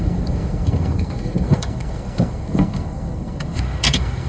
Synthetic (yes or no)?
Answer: yes